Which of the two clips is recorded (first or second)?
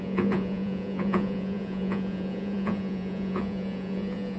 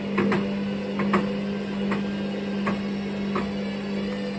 second